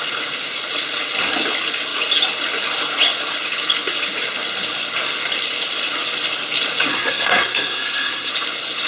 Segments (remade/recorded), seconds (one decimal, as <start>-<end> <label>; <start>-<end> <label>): 0.0-6.9 recorded; 6.9-8.3 remade; 8.3-8.9 recorded